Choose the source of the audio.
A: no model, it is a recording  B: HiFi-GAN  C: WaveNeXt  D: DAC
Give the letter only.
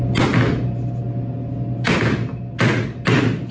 A